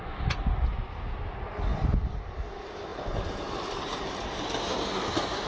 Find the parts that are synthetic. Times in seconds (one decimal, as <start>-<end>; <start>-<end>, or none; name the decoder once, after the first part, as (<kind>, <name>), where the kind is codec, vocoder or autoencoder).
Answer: 1.7-2.3 (vocoder, BigVGAN v2); 2.9-3.5